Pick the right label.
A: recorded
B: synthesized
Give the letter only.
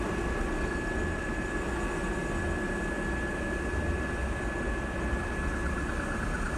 A